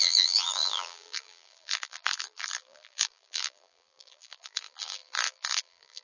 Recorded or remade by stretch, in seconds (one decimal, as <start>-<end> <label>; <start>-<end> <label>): 0.0-6.0 remade

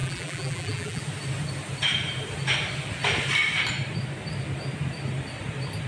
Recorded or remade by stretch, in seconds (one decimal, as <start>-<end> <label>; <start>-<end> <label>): 0.0-1.0 remade; 1.0-5.9 recorded